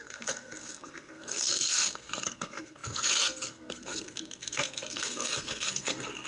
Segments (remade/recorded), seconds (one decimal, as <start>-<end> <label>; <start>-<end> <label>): 0.0-6.3 remade